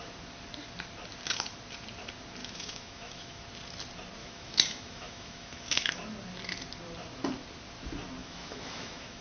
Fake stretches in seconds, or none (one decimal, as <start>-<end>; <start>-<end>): 2.4-3.4; 4.2-5.9; 8.2-9.2